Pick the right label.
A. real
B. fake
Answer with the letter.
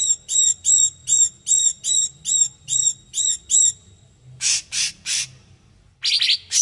A